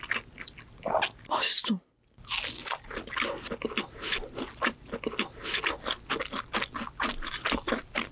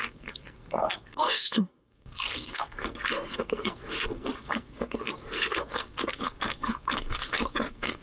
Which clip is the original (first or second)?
first